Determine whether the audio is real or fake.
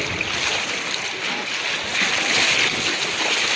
real